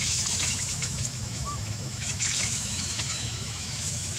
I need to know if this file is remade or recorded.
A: remade